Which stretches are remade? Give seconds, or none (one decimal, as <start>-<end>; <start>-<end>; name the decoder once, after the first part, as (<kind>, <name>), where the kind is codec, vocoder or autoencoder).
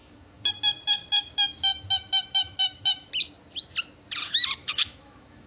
0.0-0.6 (autoencoder, DAC-VAE); 1.7-3.1; 4.6-5.5